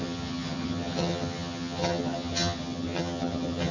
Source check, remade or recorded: remade